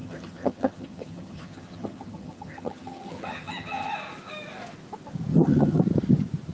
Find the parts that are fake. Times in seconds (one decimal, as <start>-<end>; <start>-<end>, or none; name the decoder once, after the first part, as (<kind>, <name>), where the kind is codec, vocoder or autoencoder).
0.0-3.9 (vocoder, HiFi-GAN); 5.3-5.8